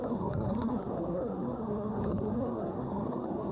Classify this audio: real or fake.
fake